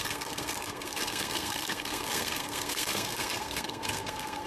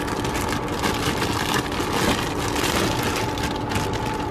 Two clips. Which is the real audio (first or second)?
second